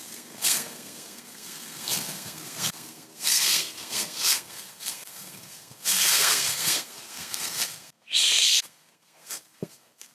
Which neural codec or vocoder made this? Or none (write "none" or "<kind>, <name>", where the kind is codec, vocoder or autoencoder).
codec, SNAC